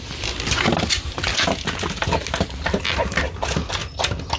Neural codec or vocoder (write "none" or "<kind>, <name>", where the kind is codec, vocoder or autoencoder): none